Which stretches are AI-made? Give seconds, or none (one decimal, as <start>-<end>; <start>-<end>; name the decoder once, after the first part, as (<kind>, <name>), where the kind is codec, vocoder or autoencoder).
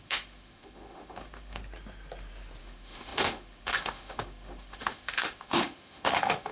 0.0-1.6 (autoencoder, DAC-VAE); 2.6-6.5